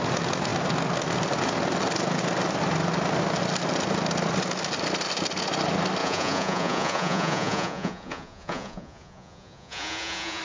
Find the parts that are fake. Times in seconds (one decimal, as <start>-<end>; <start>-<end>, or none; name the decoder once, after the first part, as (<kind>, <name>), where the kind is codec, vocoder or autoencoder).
6.0-10.4 (vocoder, Vocos)